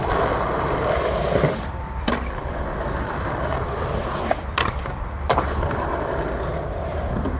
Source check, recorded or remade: remade